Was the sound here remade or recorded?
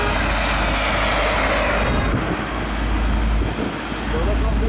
recorded